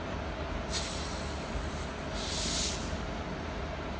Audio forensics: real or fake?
real